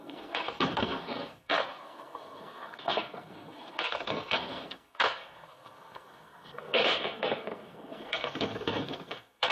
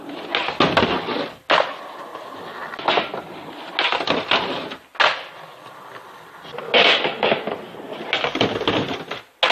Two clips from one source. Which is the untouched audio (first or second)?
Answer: second